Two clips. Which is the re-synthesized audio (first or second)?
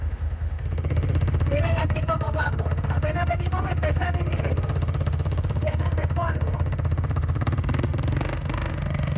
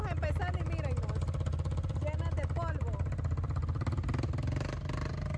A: first